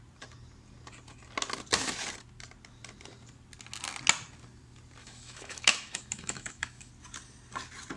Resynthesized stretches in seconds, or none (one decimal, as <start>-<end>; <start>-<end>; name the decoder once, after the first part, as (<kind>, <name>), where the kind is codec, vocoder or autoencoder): 5.0-6.9 (autoencoder, DAC-VAE)